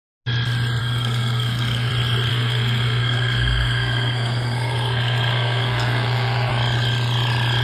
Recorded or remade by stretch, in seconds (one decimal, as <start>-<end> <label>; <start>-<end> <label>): 0.0-0.8 recorded; 0.8-1.9 remade; 1.9-2.3 recorded; 2.3-6.5 remade; 6.5-7.6 recorded